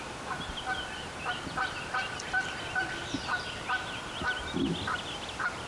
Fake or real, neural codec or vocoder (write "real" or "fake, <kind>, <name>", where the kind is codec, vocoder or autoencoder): real